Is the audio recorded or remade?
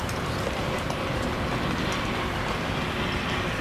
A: recorded